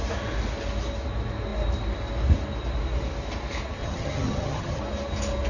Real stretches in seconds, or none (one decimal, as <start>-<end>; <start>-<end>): 0.0-3.8; 4.8-5.5